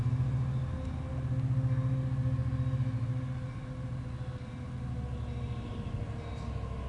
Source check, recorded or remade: recorded